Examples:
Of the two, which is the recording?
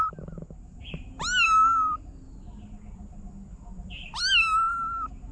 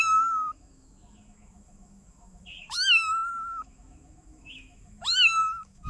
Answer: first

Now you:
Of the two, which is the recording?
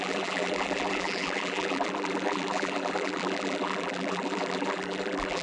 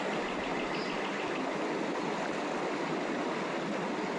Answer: second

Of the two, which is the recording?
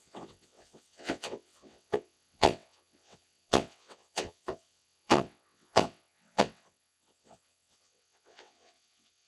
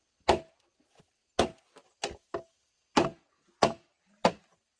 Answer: second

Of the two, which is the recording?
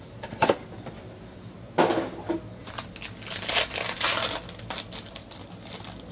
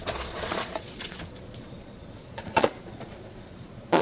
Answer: first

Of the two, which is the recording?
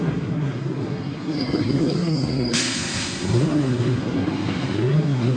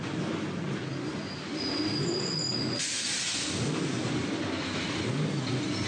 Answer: second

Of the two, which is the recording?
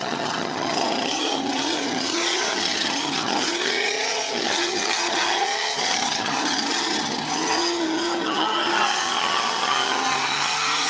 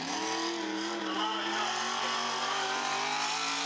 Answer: second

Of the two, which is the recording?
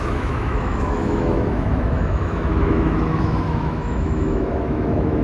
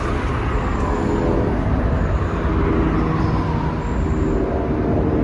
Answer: second